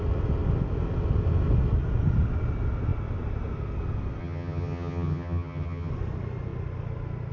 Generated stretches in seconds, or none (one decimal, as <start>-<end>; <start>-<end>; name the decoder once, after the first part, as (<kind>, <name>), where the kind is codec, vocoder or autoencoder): 4.2-5.9 (vocoder, HiFi-GAN)

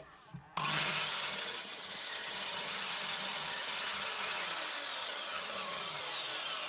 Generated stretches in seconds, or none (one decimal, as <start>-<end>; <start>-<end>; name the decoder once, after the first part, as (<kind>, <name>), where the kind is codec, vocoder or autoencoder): 0.6-4.6 (vocoder, HiFi-GAN); 5.0-6.0

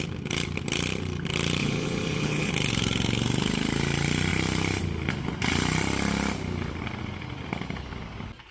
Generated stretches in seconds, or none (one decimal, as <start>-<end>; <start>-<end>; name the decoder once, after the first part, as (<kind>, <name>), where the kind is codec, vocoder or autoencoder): 1.6-2.5 (vocoder, HiFi-GAN)

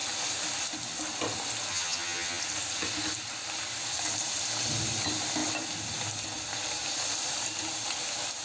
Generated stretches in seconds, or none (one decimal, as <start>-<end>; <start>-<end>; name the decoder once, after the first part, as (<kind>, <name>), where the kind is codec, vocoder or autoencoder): 1.7-2.4 (vocoder, HiFi-GAN)

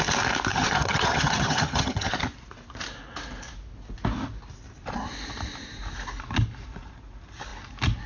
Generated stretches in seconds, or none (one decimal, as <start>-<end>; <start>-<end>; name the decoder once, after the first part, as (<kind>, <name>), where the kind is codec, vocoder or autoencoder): 0.5-2.1 (vocoder, HiFi-GAN)

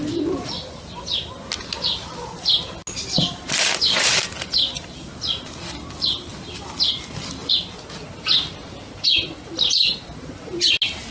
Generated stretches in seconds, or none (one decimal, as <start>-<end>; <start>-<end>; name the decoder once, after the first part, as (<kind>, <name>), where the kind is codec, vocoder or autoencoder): none

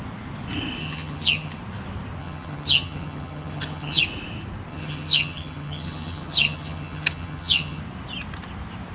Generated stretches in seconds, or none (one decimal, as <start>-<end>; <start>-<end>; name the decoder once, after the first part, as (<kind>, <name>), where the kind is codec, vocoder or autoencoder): 0.8-1.6 (vocoder, HiFi-GAN); 2.2-4.0; 4.7-7.8

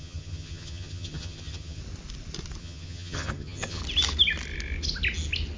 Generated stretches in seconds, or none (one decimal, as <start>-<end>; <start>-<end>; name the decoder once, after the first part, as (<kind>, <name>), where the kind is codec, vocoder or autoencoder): 0.0-1.8 (vocoder, HiFi-GAN); 2.6-3.8